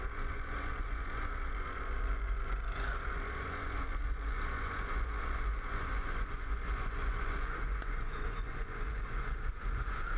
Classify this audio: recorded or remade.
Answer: remade